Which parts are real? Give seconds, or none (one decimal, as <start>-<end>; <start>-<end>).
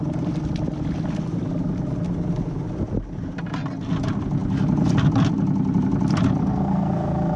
0.0-6.4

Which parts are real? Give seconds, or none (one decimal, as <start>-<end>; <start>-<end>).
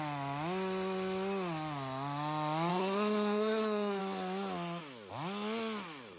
0.0-2.7; 4.0-6.2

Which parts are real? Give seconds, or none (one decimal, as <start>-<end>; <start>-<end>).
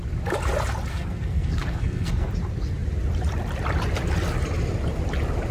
0.0-0.9; 2.3-5.5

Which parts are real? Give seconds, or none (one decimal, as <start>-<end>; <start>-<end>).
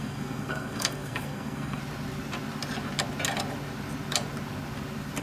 1.8-5.2